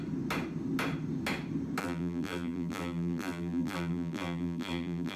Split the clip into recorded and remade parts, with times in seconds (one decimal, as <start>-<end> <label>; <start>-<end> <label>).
0.0-1.8 recorded; 1.8-5.2 remade